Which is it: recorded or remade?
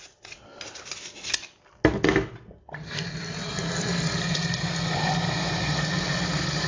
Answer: recorded